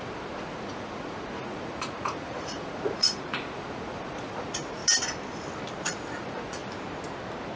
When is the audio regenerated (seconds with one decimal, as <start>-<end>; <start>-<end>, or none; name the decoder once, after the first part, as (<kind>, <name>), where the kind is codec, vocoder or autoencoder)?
0.0-4.8 (vocoder, Vocos); 5.7-6.6